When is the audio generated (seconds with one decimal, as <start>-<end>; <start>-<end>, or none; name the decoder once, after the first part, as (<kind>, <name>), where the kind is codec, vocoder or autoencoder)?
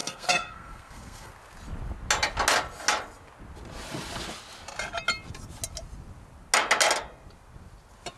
0.0-1.3 (codec, SNAC)